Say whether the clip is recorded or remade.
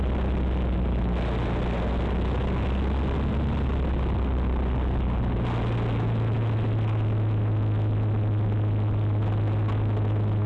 recorded